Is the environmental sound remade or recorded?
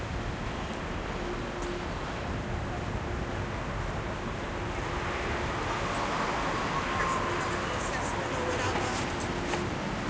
recorded